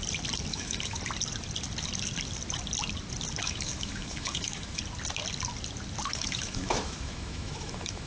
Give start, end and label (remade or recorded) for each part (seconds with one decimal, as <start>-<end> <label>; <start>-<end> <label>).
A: 0.0-0.5 recorded; 0.5-1.0 remade; 1.0-3.4 recorded; 3.4-4.8 remade; 4.8-6.1 recorded; 6.1-8.1 remade